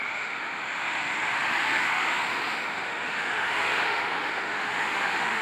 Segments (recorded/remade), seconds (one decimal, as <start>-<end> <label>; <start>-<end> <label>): 0.0-5.4 remade